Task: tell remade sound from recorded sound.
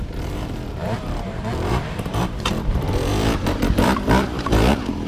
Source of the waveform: remade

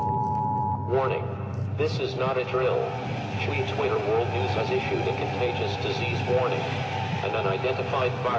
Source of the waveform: recorded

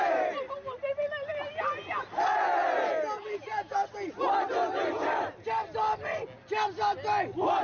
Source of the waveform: recorded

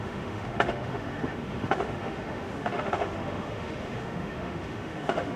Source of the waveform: remade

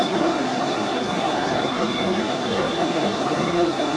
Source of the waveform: remade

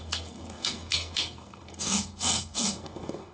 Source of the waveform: remade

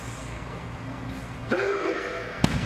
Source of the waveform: remade